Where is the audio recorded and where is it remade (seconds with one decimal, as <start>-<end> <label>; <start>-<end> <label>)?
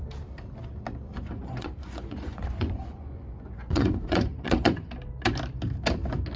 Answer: 0.0-1.1 recorded; 1.1-4.9 remade; 4.9-6.4 recorded